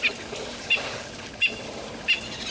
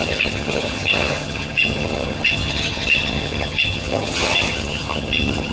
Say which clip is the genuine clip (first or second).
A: first